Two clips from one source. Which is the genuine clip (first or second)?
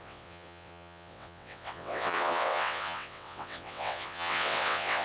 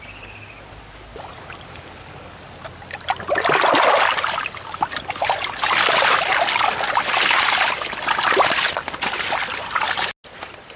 second